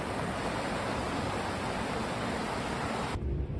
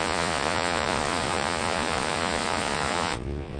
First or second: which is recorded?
first